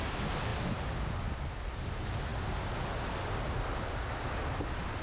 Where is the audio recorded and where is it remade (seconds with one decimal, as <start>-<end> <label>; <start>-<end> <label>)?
0.0-5.0 recorded